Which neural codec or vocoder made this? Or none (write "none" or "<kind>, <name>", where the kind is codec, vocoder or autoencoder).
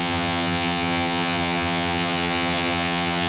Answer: vocoder, HiFi-GAN